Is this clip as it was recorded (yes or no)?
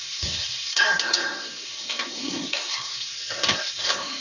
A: no